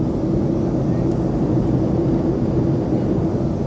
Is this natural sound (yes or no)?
yes